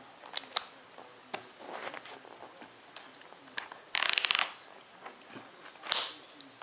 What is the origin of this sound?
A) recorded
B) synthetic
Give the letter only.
A